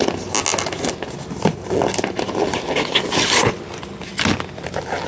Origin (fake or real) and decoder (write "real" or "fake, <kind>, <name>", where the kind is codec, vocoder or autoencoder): real